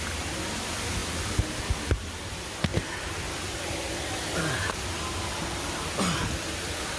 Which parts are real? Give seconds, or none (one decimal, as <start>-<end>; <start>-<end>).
0.0-7.0